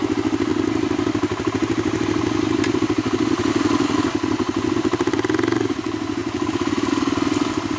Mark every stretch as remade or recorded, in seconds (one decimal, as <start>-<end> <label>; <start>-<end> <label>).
0.0-7.8 recorded